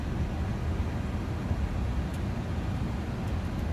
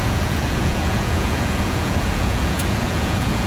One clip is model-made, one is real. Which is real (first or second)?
first